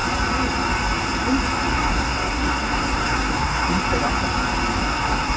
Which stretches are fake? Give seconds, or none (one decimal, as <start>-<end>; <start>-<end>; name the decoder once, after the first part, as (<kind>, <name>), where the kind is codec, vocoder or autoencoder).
1.7-3.7 (codec, SNAC); 4.8-5.4

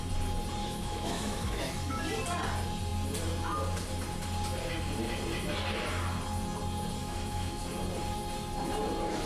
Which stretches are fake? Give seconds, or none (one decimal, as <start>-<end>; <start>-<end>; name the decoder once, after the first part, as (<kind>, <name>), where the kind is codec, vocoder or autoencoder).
0.6-1.7 (autoencoder, DAC-VAE); 7.0-7.6